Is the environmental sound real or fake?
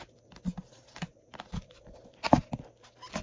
real